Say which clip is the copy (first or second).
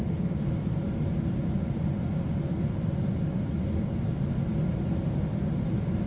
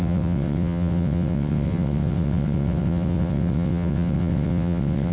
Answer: second